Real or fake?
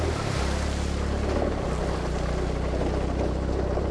real